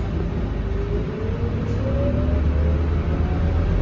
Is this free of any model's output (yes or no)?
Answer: yes